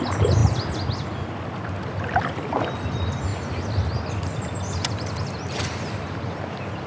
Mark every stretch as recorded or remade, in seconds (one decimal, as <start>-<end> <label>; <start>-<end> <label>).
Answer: 0.0-6.9 recorded